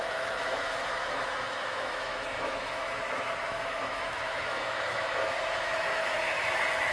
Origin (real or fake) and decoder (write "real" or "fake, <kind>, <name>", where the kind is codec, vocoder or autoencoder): fake, autoencoder, DAC-VAE